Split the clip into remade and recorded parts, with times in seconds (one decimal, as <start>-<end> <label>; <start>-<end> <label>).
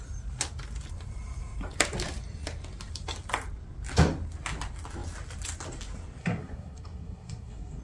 0.0-6.2 recorded; 6.2-7.8 remade